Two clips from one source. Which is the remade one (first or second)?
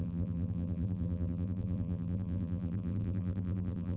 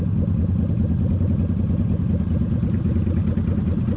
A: first